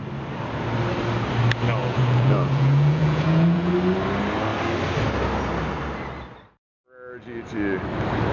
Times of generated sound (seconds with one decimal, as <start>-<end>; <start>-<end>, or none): 1.8-3.7